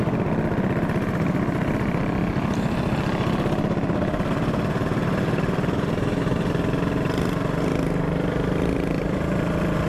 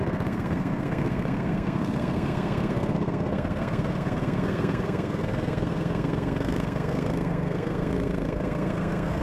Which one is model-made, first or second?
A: second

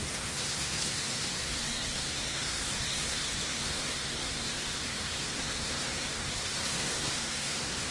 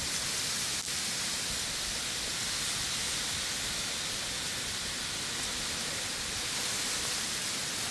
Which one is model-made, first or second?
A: first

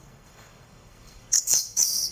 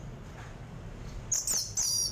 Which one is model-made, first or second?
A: first